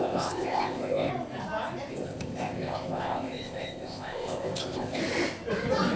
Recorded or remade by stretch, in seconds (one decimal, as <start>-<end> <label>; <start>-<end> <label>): 0.0-1.1 remade; 1.1-1.9 recorded; 1.9-5.0 remade; 5.0-6.0 recorded